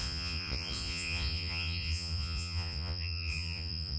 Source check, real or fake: fake